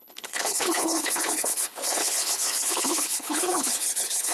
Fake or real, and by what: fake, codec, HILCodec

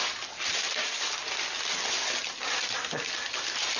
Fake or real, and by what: real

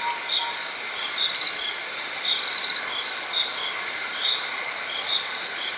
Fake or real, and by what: real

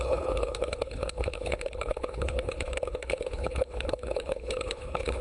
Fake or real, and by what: fake, codec, HILCodec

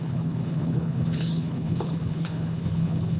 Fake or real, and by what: fake, codec, HILCodec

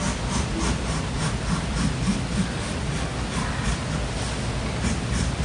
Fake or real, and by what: real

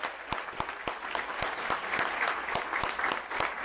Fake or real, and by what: real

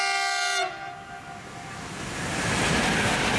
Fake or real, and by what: real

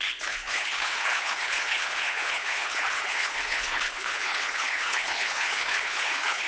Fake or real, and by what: fake, codec, HILCodec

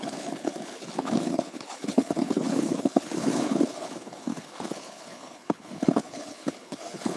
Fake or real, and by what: fake, codec, HILCodec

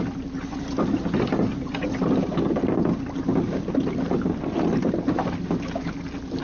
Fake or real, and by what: real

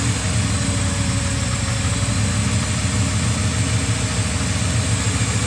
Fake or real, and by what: real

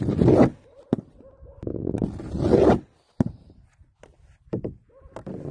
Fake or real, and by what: real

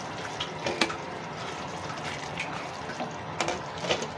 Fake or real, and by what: real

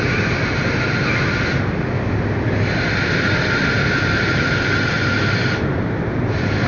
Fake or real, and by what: real